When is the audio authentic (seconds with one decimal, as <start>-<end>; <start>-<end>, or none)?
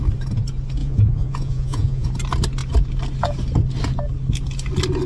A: 0.0-0.8; 2.1-5.1